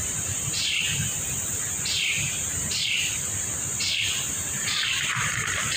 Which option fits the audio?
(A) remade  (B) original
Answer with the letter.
B